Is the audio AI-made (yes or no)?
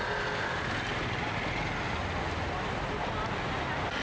no